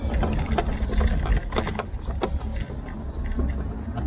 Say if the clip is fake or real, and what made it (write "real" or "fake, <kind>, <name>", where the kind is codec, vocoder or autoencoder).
real